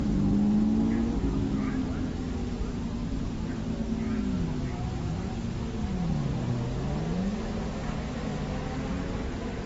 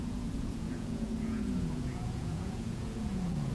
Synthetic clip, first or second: second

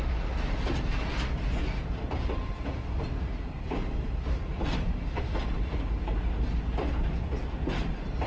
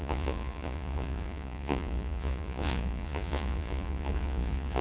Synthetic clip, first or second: second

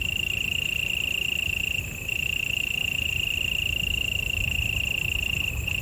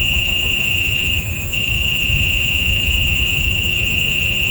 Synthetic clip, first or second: second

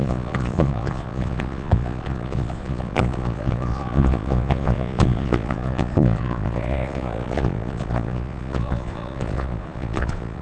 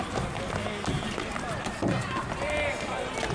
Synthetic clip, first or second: first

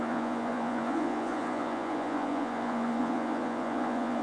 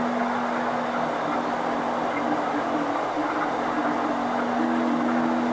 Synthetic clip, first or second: first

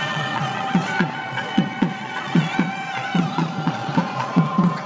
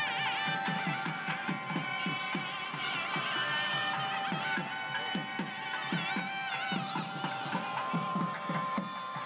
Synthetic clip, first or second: first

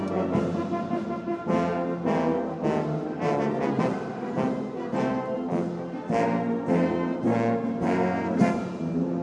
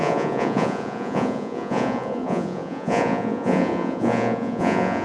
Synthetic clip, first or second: second